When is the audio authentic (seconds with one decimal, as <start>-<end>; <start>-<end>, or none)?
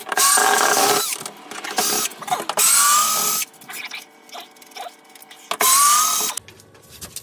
0.0-0.4; 0.9-7.2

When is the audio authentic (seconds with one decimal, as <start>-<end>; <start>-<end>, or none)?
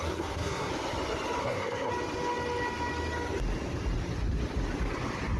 0.7-1.4; 1.9-5.4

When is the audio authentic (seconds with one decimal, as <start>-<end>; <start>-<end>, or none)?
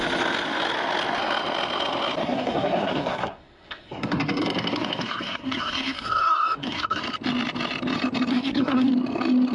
0.0-2.2; 7.0-8.3; 8.9-9.5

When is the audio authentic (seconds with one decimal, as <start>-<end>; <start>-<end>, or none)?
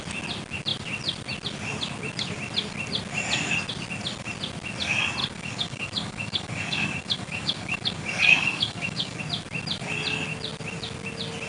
0.0-5.2; 9.2-11.5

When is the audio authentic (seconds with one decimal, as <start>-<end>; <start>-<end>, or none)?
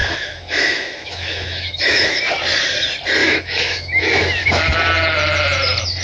2.2-3.2; 4.2-6.0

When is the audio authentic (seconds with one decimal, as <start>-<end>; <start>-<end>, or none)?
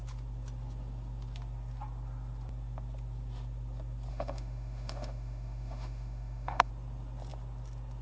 0.0-4.1; 6.7-8.0